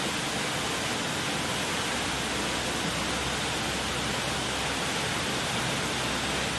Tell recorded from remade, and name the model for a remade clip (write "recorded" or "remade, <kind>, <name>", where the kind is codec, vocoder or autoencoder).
recorded